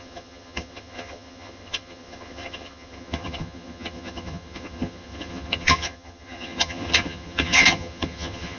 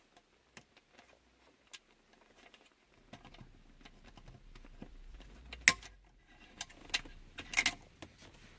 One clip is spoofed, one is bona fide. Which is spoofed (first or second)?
first